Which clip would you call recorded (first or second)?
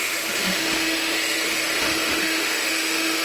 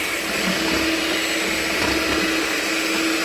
second